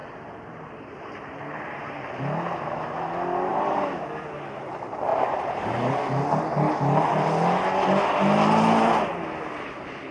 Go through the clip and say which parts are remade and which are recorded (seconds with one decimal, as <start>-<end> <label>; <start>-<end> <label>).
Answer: 0.0-2.2 remade; 2.2-3.5 recorded; 3.5-4.3 remade; 4.3-5.1 recorded; 5.1-5.9 remade; 5.9-10.1 recorded